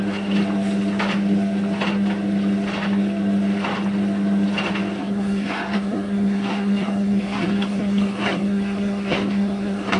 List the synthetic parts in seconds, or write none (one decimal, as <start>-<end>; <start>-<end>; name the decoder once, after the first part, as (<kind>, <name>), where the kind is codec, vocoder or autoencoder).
5.0-10.0 (codec, SNAC)